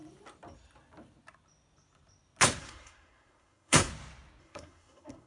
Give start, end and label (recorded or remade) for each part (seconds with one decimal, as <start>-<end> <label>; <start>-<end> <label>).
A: 0.0-2.6 recorded; 2.6-3.9 remade; 3.9-4.4 recorded; 4.4-5.3 remade